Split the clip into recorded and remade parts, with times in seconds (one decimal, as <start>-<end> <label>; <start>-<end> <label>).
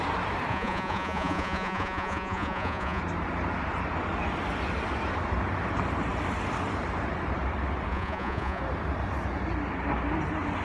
0.0-0.5 recorded; 0.5-3.0 remade; 3.0-7.9 recorded; 7.9-8.6 remade; 8.6-10.6 recorded